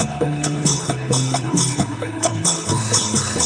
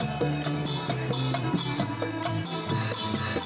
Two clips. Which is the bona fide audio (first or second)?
second